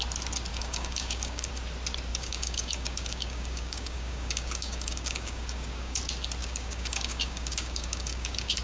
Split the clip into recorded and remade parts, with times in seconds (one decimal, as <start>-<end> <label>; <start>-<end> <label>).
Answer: 0.0-0.5 recorded; 0.5-1.5 remade; 1.5-2.1 recorded; 2.1-6.0 remade; 6.0-6.4 recorded; 6.4-8.6 remade